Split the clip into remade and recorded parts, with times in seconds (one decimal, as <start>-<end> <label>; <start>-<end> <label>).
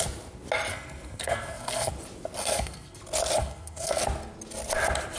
0.0-0.7 recorded; 0.7-1.9 remade; 1.9-2.4 recorded; 2.4-3.0 remade; 3.0-3.4 recorded; 3.4-4.0 remade; 4.0-5.2 recorded